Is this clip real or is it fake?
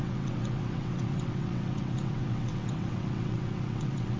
fake